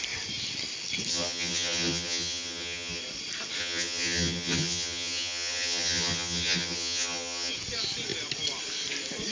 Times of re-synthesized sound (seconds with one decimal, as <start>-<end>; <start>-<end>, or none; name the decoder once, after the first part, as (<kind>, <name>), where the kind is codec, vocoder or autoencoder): 1.1-3.0 (vocoder, HiFi-GAN); 3.6-7.5